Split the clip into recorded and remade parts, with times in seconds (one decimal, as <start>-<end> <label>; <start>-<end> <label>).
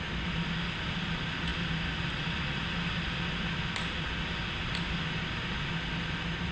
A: 0.0-6.5 recorded